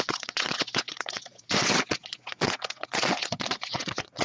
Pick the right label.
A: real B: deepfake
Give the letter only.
B